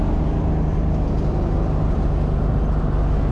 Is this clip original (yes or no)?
yes